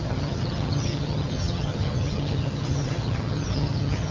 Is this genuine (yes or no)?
no